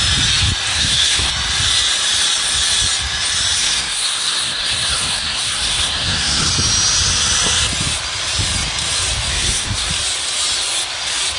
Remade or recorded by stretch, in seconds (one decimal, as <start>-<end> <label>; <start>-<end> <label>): 0.0-0.7 recorded; 0.7-1.3 remade; 1.3-3.6 recorded; 3.6-6.5 remade; 6.5-9.3 recorded; 9.3-9.9 remade; 9.9-11.4 recorded